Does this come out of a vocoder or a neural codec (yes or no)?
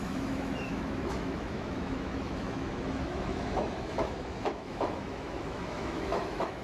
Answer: yes